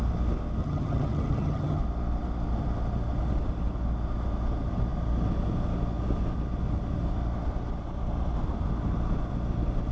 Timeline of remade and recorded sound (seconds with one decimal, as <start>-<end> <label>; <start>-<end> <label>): 0.0-0.6 recorded; 0.6-1.8 remade; 1.8-9.9 recorded